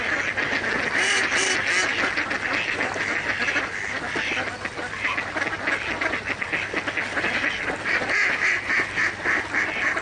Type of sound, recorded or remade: recorded